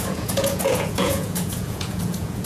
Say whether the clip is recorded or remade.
remade